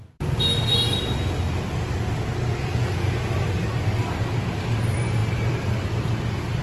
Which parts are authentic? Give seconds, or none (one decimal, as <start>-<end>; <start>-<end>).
0.0-6.6